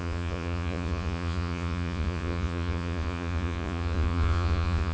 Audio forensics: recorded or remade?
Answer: remade